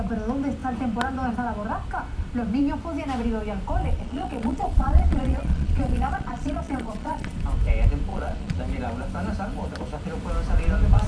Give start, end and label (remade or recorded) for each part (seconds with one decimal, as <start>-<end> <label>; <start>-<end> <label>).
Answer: 0.0-3.8 recorded; 3.8-7.3 remade; 7.3-8.1 recorded; 8.1-8.6 remade; 8.6-11.1 recorded